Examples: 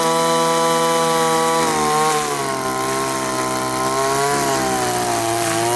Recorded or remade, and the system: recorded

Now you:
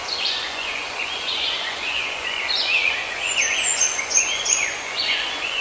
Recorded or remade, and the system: remade, vocoder, Vocos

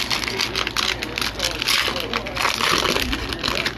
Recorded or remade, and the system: recorded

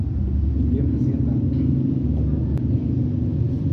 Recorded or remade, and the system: recorded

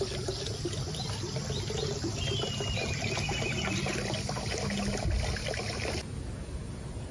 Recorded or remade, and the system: recorded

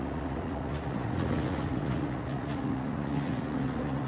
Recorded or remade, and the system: remade, vocoder, Vocos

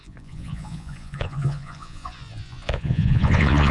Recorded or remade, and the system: remade, vocoder, Vocos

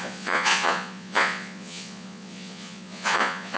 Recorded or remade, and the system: remade, vocoder, Vocos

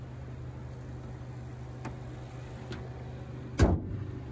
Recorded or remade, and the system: recorded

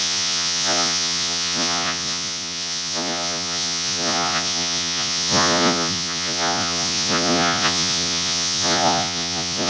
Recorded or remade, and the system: remade, vocoder, Vocos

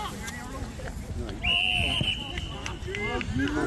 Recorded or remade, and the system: recorded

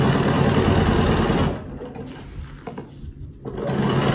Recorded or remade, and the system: recorded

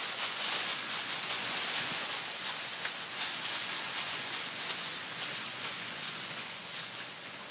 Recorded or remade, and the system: remade, vocoder, Vocos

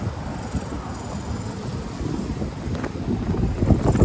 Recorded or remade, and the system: recorded